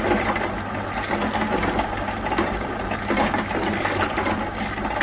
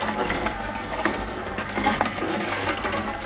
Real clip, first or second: first